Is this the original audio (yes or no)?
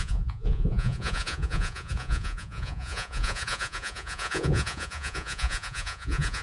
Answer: no